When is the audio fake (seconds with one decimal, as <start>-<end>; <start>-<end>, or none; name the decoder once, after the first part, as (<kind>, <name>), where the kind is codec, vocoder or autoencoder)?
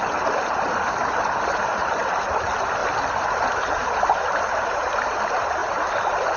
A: 0.0-2.8 (vocoder, BigVGAN v2); 4.1-5.6